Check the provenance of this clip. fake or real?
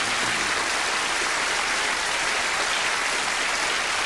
real